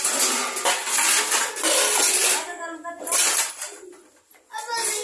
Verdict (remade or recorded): recorded